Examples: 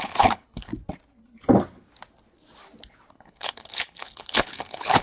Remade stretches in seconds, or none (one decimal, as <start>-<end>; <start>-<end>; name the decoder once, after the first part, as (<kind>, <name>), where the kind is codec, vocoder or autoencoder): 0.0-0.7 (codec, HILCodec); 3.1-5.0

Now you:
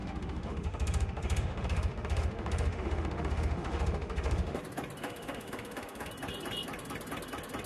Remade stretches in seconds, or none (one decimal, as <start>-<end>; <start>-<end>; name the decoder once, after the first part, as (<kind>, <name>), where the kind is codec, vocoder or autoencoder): 0.0-4.6 (autoencoder, DAC-VAE); 5.0-6.1

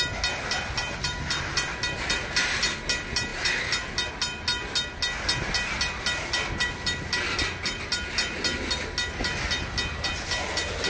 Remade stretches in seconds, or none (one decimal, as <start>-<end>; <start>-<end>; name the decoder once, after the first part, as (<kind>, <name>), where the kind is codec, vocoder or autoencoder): none